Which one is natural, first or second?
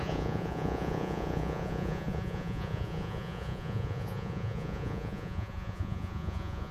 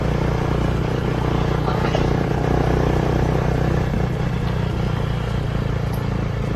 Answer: second